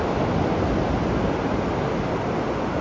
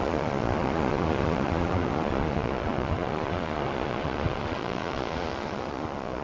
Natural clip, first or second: first